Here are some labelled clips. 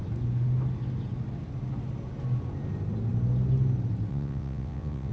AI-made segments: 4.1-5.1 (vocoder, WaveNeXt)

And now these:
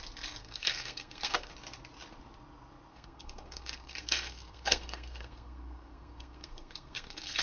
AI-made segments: 0.4-1.5 (codec, SNAC); 2.9-7.4

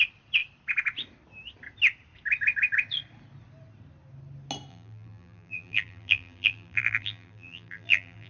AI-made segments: 4.7-8.3 (vocoder, BigVGAN v2)

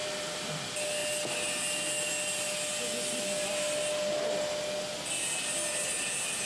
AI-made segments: 0.0-0.5 (vocoder, BigVGAN v2)

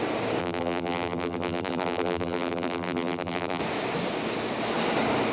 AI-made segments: 0.4-3.6 (vocoder, BigVGAN v2)

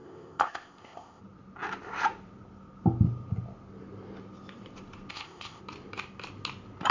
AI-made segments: 0.0-1.2 (codec, ZipCodec); 5.1-5.6

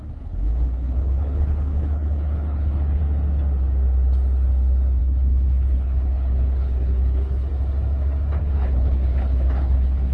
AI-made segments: 0.0-3.0 (codec, HILCodec); 5.0-7.5; 8.4-10.1